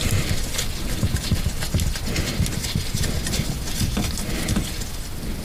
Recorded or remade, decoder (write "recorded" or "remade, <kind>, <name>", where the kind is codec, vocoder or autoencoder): recorded